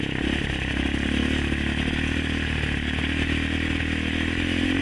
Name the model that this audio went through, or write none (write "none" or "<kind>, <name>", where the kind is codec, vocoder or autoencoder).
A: none